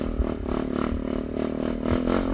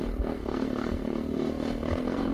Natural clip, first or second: first